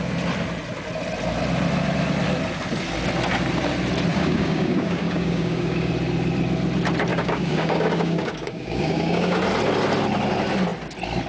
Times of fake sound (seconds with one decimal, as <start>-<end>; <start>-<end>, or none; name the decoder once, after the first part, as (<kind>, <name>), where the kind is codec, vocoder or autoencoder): 4.1-5.9 (codec, DAC); 7.1-9.4